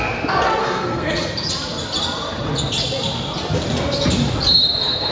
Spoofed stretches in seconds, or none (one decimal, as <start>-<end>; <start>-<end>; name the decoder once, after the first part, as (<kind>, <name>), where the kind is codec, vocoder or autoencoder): 0.6-1.1 (codec, SNAC)